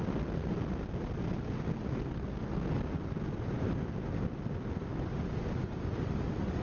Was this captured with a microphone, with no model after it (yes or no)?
yes